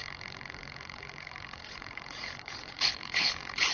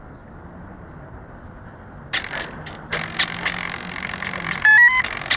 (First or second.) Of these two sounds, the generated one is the first